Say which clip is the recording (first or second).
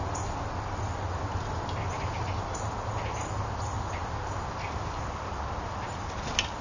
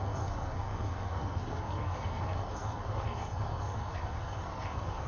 first